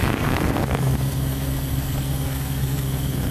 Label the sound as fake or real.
fake